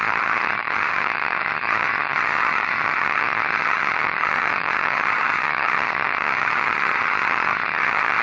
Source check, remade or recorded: remade